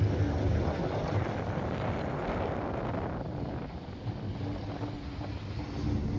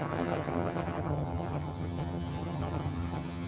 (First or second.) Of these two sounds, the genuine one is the first